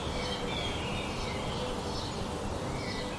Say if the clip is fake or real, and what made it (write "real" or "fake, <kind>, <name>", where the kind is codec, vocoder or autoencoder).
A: real